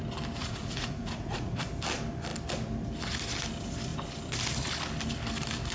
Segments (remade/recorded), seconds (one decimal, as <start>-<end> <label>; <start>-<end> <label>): 0.0-0.4 recorded; 0.4-1.6 remade; 1.6-5.7 recorded